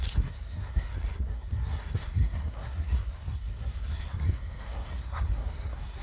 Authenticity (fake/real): fake